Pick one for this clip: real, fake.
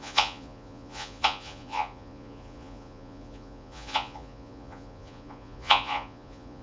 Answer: fake